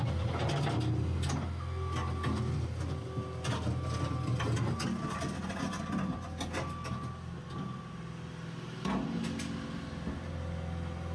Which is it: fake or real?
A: real